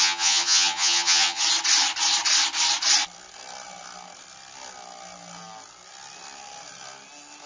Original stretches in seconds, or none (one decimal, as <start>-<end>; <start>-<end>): 1.4-7.5